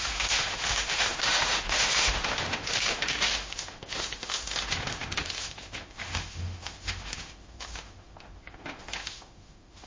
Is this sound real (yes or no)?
no